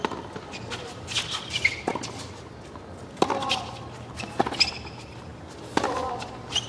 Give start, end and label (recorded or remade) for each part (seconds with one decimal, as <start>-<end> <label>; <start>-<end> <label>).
0.0-6.7 recorded